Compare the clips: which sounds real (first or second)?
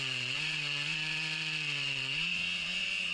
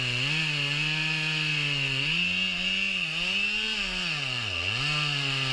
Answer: second